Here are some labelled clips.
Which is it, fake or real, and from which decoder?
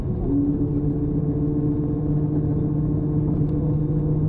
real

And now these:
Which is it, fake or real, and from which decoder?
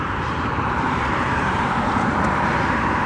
fake, vocoder, BigVGAN v2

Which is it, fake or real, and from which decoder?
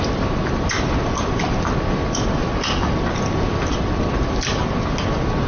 real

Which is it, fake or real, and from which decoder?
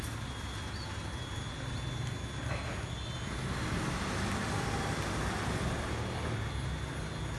real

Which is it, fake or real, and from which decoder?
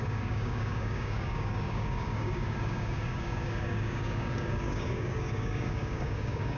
fake, codec, DAC